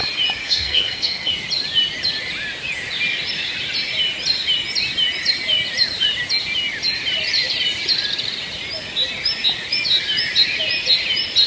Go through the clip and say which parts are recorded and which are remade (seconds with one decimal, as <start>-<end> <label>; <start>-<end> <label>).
0.0-0.4 recorded; 0.4-1.3 remade; 1.3-11.5 recorded